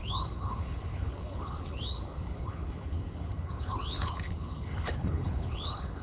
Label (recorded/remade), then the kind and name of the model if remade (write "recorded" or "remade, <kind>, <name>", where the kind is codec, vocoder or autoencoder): remade, codec, HILCodec